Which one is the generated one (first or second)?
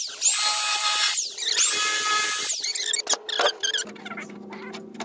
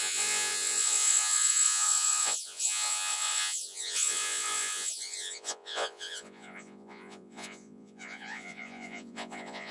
second